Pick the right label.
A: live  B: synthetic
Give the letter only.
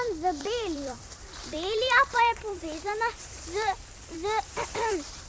B